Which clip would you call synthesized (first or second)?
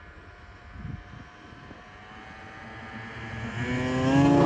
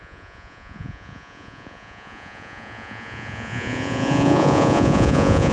second